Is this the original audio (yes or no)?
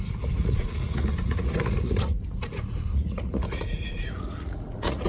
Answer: no